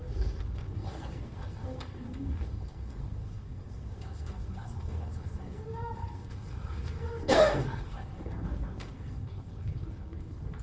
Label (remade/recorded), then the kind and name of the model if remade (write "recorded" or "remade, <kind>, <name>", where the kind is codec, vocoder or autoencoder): remade, codec, SNAC